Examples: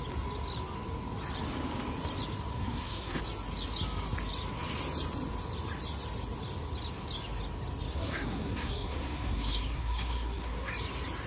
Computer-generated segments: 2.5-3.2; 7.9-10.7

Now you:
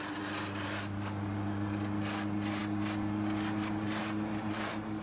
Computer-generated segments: none

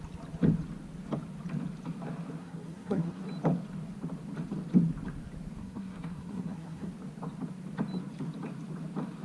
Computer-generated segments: 2.4-3.2; 5.6-6.9

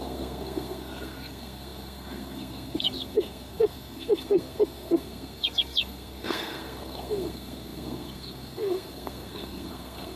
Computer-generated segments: 0.0-10.2

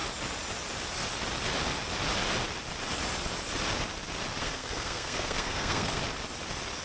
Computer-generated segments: 4.4-6.0

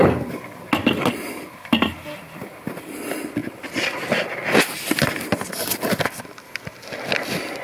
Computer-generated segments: none

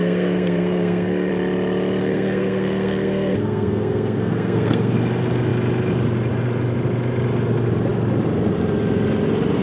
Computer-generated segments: 0.0-1.3; 2.0-4.9

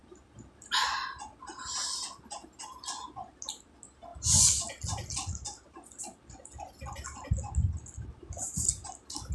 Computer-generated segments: none